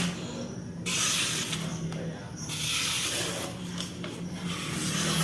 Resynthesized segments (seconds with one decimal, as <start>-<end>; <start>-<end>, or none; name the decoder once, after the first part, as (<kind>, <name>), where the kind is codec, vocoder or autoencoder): none